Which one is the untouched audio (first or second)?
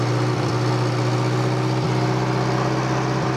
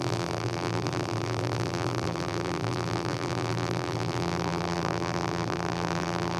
first